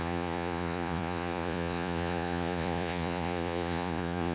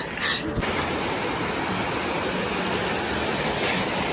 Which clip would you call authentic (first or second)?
second